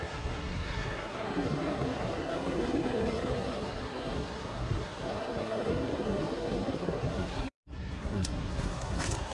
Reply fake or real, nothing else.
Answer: fake